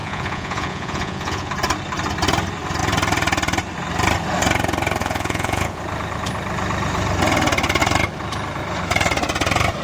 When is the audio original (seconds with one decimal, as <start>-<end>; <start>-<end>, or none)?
1.5-5.0; 5.8-9.8